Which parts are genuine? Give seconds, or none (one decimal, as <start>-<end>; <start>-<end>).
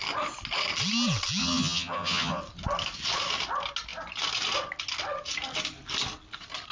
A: 0.0-1.4; 2.4-6.7